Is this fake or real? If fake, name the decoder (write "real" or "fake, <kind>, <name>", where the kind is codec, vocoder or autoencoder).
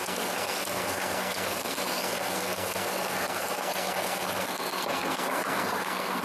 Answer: fake, codec, SNAC